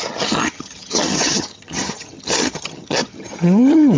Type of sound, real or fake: fake